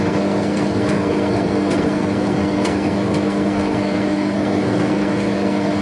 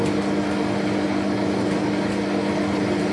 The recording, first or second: second